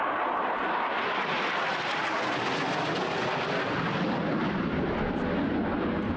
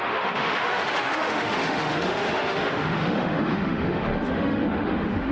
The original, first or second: first